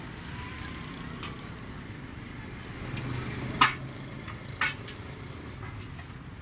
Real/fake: real